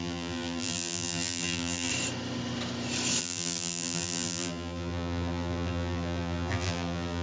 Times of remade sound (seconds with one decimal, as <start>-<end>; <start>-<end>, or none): 0.0-1.9; 3.2-7.2